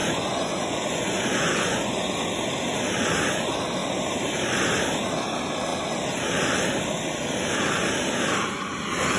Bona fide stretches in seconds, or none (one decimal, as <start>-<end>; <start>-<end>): 2.1-9.2